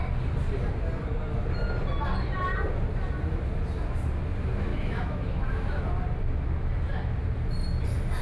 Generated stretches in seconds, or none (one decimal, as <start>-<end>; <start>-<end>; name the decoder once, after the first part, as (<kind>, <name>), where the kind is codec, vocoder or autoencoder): 4.7-5.8 (autoencoder, DAC-VAE)